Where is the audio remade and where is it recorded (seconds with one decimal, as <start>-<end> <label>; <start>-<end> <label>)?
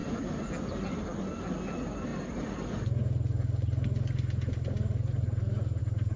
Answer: 0.0-6.2 recorded